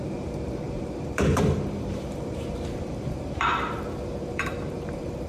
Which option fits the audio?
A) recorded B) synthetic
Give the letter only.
B